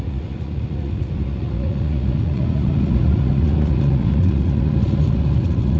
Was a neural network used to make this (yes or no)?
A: yes